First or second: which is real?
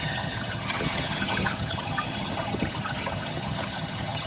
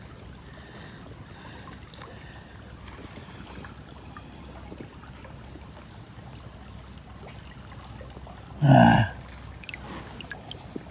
second